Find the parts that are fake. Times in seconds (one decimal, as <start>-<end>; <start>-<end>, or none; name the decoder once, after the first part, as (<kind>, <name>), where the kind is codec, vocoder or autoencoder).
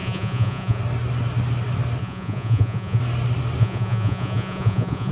0.0-0.8 (vocoder, Vocos); 2.0-3.0; 3.6-5.1